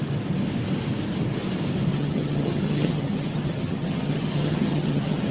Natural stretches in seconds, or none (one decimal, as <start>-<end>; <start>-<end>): 0.0-1.9

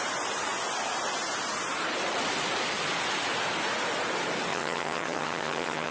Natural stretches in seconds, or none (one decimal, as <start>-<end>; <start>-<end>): 0.0-4.5

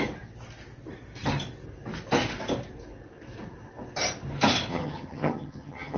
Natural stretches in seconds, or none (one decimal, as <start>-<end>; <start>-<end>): 0.0-4.7

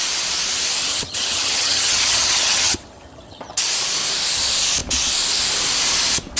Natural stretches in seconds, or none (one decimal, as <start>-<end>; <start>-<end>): 0.0-0.9; 3.6-6.4

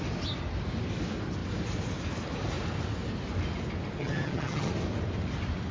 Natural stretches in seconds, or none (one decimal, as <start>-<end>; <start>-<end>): 0.0-4.0; 4.7-5.7